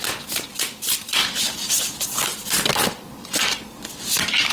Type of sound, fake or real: real